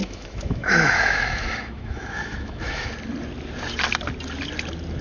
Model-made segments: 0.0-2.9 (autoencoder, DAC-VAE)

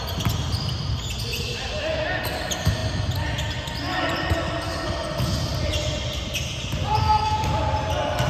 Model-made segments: 7.0-7.5 (codec, SNAC)

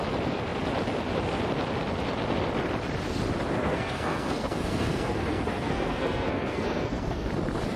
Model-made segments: 3.6-7.3 (codec, SNAC)

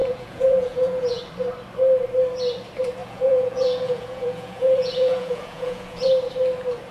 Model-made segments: 0.0-1.2 (vocoder, Vocos); 3.0-6.1

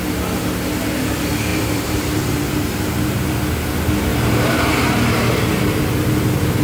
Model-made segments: 1.5-3.3 (vocoder, BigVGAN v2); 4.1-5.8

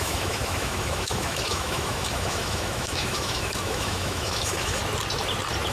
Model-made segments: 0.0-4.8 (autoencoder, DAC-VAE)